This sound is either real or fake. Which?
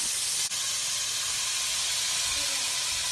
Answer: real